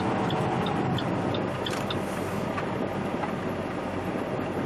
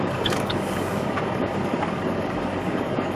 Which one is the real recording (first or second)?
first